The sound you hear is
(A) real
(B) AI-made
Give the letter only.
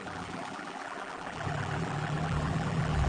B